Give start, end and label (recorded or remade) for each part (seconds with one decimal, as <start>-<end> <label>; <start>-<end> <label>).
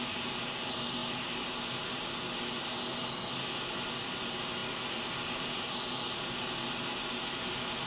0.0-4.6 recorded; 4.6-5.7 remade; 5.7-7.9 recorded